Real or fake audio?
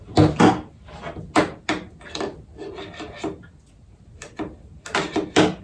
real